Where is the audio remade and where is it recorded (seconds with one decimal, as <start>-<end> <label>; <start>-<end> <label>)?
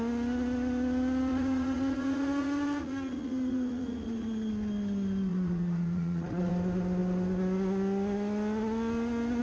0.0-1.3 recorded; 1.3-4.5 remade; 4.5-5.3 recorded; 5.3-6.5 remade; 6.5-9.4 recorded